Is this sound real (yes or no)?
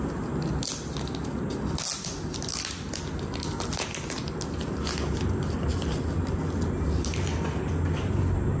yes